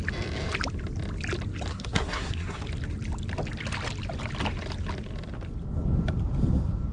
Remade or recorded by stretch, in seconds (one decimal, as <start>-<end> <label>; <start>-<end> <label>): 0.0-1.7 recorded; 1.7-2.6 remade; 2.6-6.9 recorded